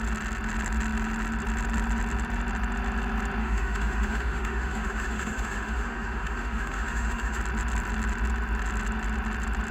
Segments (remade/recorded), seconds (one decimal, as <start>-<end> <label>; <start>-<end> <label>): 0.0-3.4 recorded; 3.4-7.4 remade; 7.4-9.7 recorded